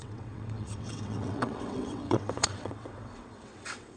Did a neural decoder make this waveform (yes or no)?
yes